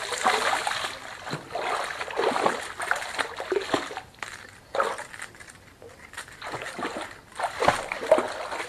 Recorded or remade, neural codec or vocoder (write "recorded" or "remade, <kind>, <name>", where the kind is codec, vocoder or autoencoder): recorded